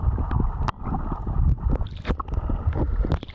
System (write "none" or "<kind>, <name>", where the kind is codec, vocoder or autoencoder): none